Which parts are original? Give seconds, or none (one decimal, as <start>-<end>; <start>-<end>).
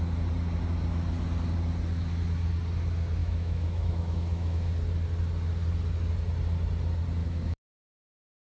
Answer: 0.0-3.2; 4.7-7.2